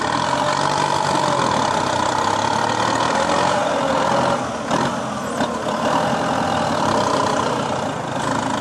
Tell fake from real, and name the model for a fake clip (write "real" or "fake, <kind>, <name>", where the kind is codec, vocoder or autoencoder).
real